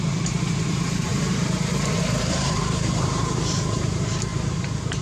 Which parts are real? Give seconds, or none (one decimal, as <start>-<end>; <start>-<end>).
none